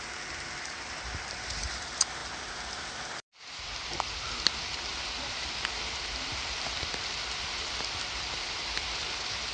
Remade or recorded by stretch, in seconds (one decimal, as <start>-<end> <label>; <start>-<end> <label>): 0.0-2.2 recorded; 2.2-4.6 remade; 4.6-6.3 recorded; 6.3-8.6 remade; 8.6-9.5 recorded